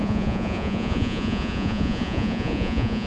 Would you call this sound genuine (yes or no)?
no